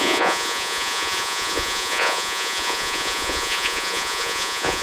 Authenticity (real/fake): fake